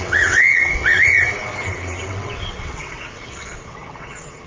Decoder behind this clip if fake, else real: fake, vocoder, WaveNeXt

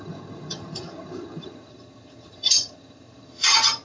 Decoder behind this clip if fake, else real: fake, vocoder, HiFi-GAN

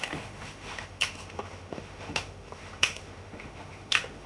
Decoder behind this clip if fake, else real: fake, autoencoder, DAC-VAE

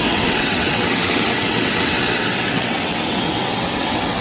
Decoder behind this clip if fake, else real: fake, vocoder, WaveNeXt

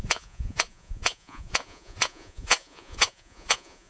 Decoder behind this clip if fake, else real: fake, vocoder, Vocos